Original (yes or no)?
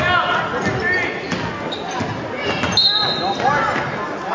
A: yes